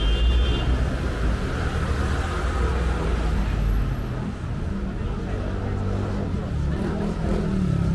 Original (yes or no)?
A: yes